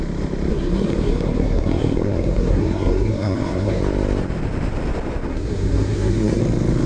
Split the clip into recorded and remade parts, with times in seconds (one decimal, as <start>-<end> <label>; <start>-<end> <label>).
0.0-0.5 recorded; 0.5-3.8 remade; 3.8-5.3 recorded; 5.3-6.4 remade; 6.4-6.9 recorded